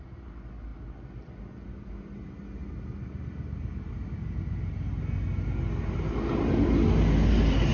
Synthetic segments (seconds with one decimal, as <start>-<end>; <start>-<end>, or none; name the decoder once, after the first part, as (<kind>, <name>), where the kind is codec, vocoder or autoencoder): none